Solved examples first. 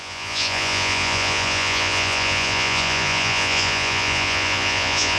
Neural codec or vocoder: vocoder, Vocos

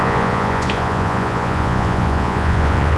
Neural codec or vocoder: vocoder, Vocos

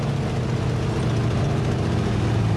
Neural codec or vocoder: none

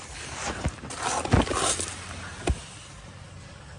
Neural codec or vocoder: none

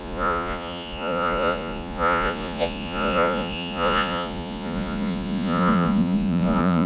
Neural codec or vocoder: vocoder, Vocos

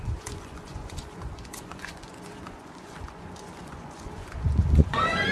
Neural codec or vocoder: vocoder, Vocos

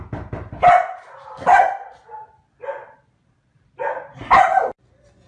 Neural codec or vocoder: none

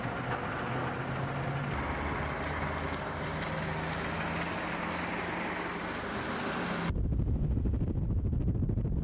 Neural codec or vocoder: none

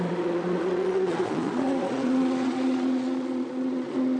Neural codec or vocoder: vocoder, Vocos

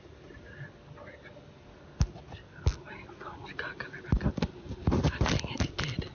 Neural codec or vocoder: none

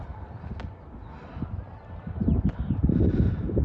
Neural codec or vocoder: none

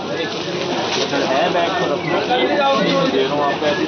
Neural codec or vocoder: none